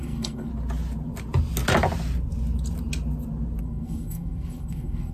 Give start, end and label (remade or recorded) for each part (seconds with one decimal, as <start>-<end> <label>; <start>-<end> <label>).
0.0-0.5 remade; 0.5-3.6 recorded; 3.6-5.1 remade